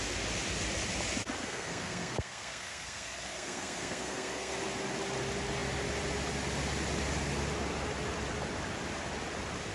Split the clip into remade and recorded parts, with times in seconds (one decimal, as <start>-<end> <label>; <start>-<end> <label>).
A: 0.0-1.4 recorded; 1.4-4.5 remade; 4.5-9.7 recorded